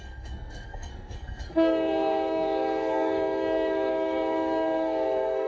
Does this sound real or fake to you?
fake